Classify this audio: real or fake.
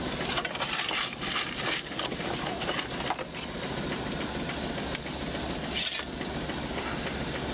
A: real